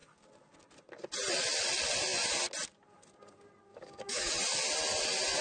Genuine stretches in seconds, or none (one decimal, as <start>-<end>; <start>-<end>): 0.0-3.7; 4.3-5.4